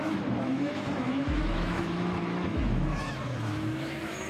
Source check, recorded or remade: remade